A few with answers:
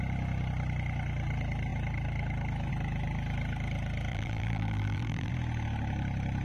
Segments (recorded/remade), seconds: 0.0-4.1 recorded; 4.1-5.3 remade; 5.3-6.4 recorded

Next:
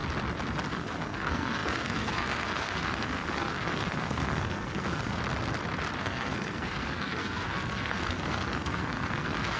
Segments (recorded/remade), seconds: 0.0-0.7 recorded; 0.7-5.2 remade; 5.2-6.0 recorded; 6.0-9.6 remade